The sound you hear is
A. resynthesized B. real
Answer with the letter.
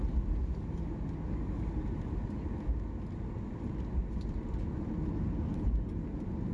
B